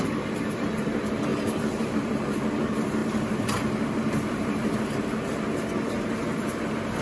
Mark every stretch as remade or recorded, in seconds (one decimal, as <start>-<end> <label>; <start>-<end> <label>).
0.0-7.0 remade